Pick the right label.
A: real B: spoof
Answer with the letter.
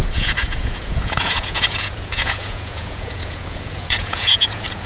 B